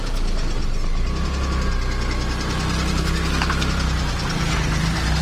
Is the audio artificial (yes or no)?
no